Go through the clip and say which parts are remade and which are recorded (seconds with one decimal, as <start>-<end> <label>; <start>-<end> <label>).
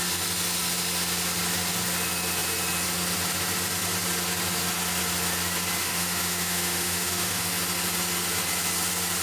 0.0-5.8 recorded; 5.8-7.4 remade; 7.4-9.2 recorded